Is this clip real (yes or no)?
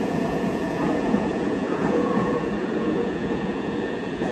no